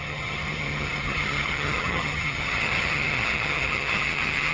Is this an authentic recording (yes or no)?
no